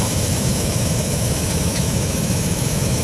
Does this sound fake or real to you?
fake